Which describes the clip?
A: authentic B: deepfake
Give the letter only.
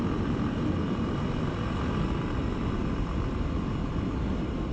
A